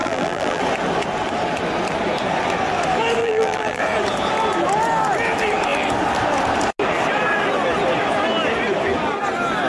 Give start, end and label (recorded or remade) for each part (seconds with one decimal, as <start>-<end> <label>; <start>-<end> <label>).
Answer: 0.0-0.6 remade; 0.6-3.2 recorded; 3.2-3.8 remade; 3.8-9.7 recorded